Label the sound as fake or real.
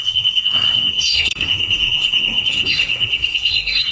fake